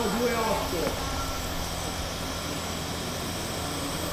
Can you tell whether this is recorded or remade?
recorded